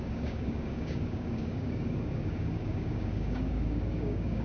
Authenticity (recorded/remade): remade